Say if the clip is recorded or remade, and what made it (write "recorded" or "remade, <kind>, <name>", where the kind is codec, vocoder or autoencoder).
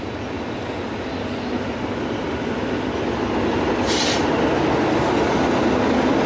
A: recorded